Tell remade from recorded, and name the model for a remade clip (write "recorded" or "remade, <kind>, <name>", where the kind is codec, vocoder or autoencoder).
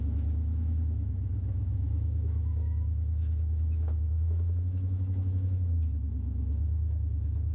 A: remade, autoencoder, DAC-VAE